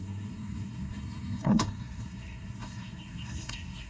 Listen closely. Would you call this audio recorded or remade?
remade